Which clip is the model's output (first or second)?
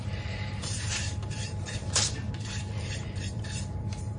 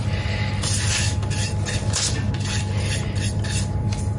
first